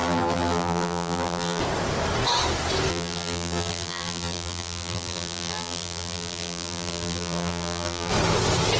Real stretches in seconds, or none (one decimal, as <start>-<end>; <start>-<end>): 1.6-2.9; 8.1-8.8